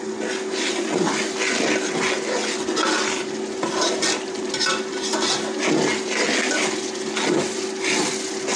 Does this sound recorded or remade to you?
recorded